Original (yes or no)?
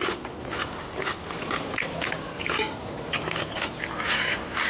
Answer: yes